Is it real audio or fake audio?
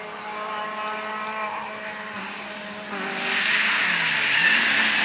real